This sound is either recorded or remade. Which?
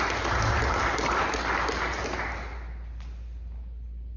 recorded